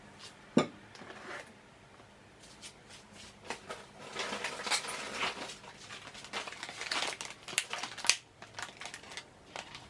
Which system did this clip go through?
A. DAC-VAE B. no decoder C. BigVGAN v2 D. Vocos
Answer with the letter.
B